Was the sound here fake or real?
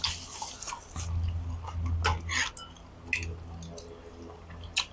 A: real